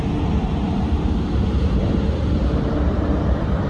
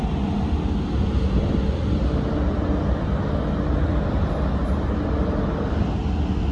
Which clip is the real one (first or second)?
second